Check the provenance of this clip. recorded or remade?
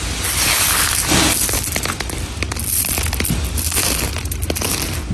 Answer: recorded